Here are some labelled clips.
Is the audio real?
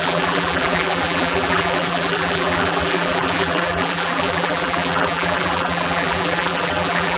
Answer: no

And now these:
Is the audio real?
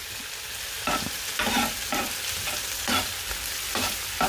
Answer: no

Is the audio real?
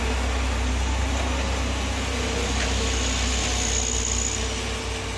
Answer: yes